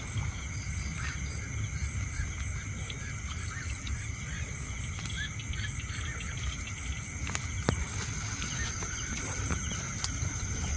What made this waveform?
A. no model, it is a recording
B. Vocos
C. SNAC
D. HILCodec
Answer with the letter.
A